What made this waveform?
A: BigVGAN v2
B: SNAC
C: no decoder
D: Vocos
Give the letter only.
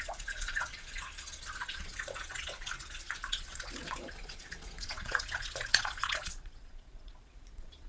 D